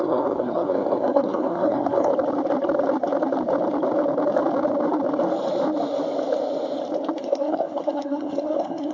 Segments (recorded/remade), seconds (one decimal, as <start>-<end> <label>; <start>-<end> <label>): 0.0-2.1 remade; 2.1-7.2 recorded; 7.2-8.9 remade